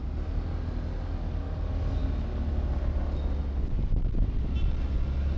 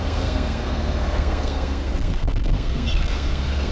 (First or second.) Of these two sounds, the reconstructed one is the second